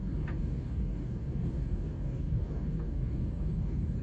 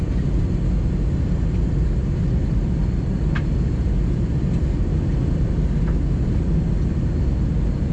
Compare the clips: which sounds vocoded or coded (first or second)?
first